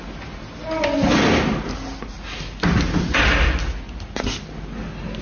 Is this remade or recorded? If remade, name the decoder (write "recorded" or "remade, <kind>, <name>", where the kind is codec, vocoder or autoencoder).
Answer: recorded